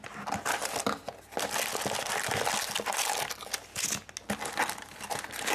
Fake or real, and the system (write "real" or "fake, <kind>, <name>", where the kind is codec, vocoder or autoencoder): real